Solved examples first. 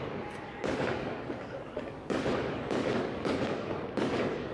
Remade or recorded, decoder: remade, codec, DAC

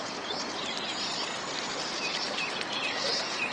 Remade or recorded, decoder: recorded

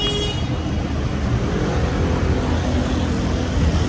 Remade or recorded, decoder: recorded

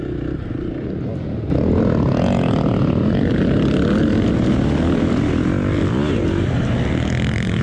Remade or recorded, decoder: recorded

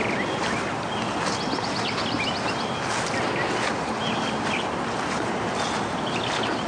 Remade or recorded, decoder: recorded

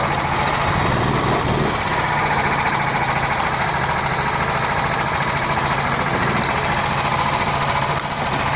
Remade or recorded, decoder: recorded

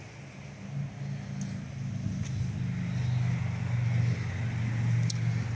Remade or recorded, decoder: recorded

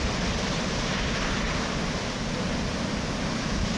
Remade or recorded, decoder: remade, vocoder, BigVGAN v2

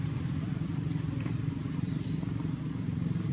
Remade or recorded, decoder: remade, vocoder, BigVGAN v2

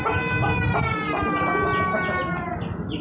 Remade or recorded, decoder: recorded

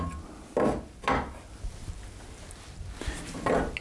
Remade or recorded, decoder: recorded